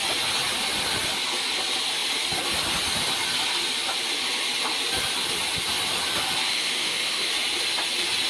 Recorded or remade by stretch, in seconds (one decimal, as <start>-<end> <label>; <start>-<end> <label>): 0.0-6.5 recorded; 6.5-7.3 remade; 7.3-8.3 recorded